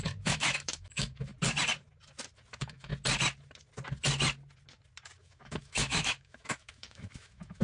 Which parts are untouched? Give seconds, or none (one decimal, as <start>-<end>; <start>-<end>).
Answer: 1.3-2.5; 2.9-5.2